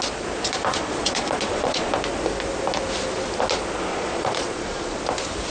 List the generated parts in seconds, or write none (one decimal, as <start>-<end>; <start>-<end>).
0.7-1.9; 3.9-5.0